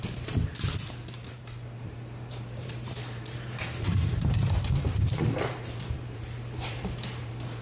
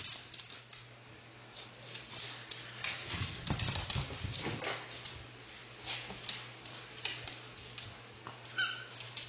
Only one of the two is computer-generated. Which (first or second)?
first